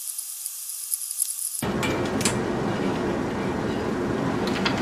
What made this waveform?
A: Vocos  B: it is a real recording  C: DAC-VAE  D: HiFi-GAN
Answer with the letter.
B